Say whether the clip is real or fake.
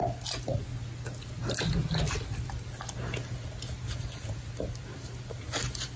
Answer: real